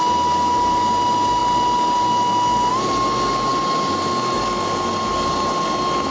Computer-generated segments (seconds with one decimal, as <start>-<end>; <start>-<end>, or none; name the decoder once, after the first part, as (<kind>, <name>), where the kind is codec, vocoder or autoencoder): none